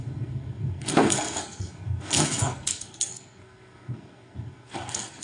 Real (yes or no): no